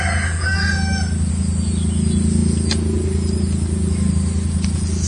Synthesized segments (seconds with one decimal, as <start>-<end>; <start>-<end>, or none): none

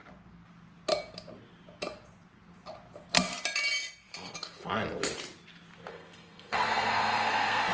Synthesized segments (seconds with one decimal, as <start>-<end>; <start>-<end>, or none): 5.9-7.7

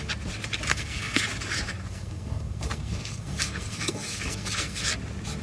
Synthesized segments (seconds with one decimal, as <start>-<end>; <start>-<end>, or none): 0.7-1.2; 1.7-4.9

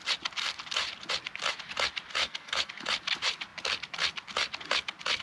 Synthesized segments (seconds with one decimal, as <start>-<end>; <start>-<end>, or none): 2.2-2.7

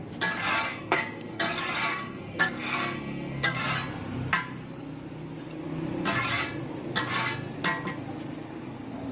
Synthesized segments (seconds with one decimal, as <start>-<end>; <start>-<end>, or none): 0.7-1.4; 1.9-3.6

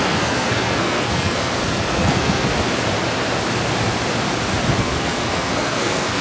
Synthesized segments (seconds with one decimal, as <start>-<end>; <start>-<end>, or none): 0.0-2.5; 4.8-6.2

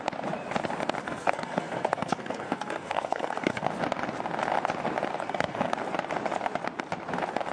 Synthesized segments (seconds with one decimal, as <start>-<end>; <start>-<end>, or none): 1.0-3.7; 5.1-5.7